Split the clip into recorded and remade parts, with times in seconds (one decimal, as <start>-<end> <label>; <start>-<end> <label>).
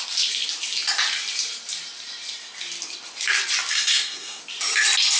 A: 0.0-3.7 recorded; 3.7-4.4 remade; 4.4-5.2 recorded